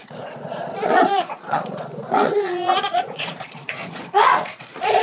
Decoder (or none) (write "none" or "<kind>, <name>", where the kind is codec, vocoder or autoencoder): vocoder, Vocos